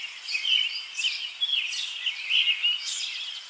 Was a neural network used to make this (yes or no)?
no